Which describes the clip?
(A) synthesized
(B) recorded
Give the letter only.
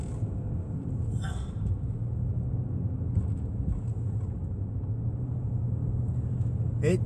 B